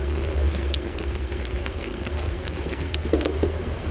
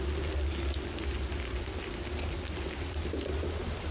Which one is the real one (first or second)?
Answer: second